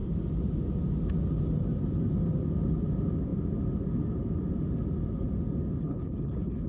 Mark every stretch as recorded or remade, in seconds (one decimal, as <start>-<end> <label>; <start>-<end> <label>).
0.0-5.8 recorded; 5.8-6.7 remade